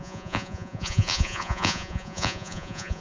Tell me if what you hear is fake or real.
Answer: fake